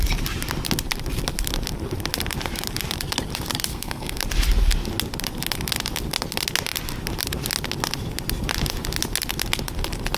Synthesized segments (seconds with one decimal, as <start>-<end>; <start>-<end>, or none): 3.7-4.2